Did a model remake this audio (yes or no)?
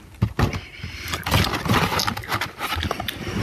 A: no